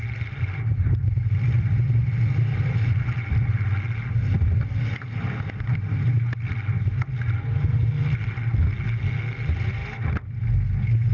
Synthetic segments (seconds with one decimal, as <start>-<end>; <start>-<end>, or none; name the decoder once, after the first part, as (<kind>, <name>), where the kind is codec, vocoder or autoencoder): none